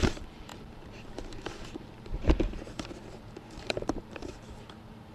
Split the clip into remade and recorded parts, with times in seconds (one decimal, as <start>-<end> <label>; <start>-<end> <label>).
0.0-5.1 remade